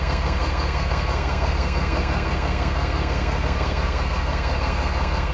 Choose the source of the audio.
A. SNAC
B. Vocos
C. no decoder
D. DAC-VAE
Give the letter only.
A